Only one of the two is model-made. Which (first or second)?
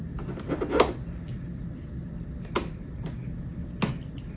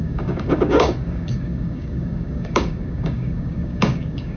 second